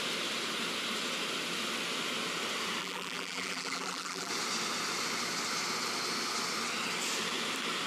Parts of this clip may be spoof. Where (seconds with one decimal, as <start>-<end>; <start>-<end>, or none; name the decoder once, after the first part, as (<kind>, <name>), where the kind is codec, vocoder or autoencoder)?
2.8-4.3 (vocoder, BigVGAN v2)